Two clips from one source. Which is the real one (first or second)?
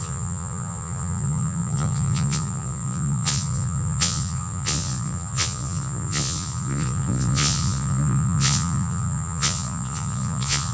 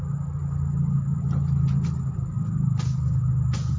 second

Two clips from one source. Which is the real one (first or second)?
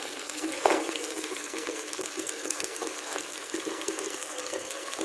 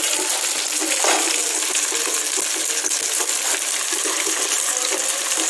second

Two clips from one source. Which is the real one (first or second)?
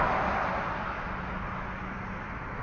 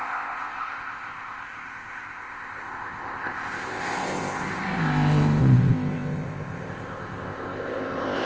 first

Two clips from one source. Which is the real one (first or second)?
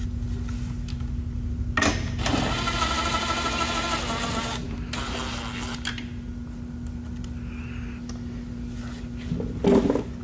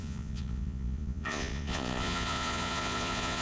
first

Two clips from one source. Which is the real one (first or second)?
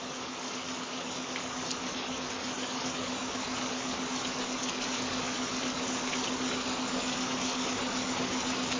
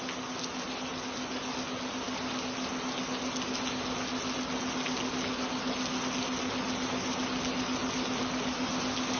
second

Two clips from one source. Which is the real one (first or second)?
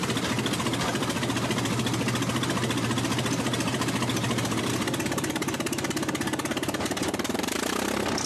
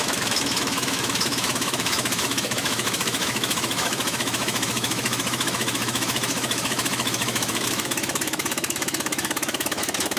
first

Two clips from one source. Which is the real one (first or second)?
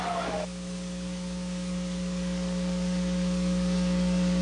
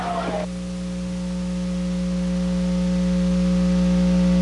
second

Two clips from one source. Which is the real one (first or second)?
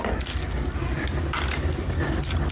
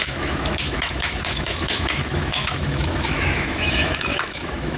first